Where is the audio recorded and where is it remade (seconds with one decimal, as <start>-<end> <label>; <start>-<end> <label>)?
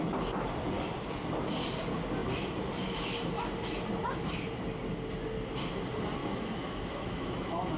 0.0-6.2 recorded; 6.2-7.8 remade